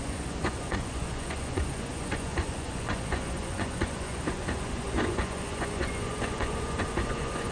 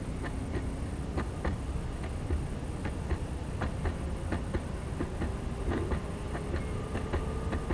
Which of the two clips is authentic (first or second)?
second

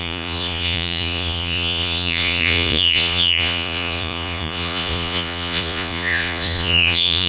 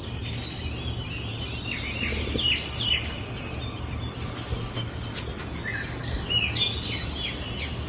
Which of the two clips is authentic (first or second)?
second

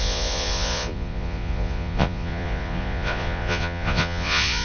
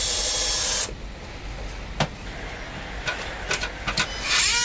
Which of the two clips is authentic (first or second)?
second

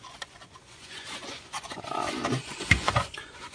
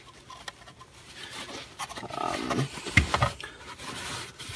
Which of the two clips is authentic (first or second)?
second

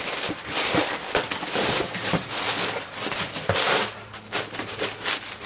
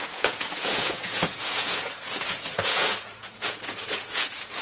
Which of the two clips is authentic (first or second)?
first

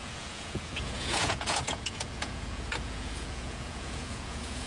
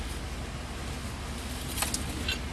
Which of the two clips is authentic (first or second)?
second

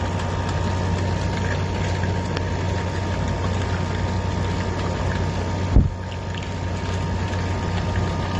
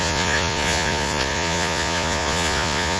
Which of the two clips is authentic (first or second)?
first